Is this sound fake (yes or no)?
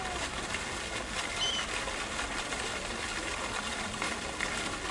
no